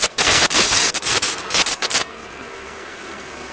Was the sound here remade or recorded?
remade